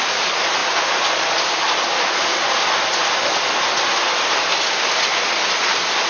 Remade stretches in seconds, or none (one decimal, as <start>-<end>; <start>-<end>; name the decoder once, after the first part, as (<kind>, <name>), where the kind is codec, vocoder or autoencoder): none

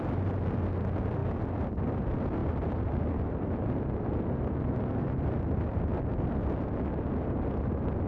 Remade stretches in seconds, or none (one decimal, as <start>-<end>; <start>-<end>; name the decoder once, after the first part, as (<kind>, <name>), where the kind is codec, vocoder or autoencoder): none

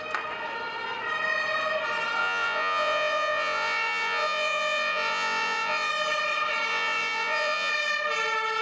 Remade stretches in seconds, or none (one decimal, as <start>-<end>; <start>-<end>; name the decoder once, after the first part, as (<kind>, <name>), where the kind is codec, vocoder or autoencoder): 2.2-5.9 (vocoder, Vocos); 6.7-7.7

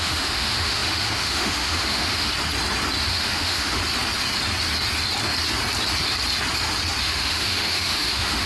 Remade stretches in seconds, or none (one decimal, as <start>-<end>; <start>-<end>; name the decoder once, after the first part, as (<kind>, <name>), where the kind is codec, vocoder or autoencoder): 0.0-2.3 (autoencoder, DAC-VAE); 3.1-3.8; 7.0-8.5